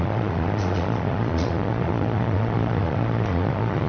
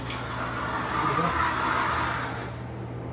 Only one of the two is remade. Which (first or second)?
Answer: first